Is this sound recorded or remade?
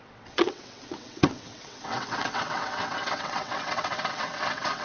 remade